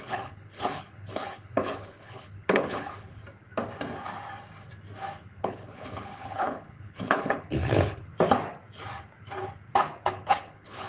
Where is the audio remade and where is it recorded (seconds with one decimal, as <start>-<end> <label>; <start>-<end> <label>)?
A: 0.0-3.2 remade; 3.2-5.4 recorded; 5.4-8.1 remade; 8.1-10.1 recorded; 10.1-10.9 remade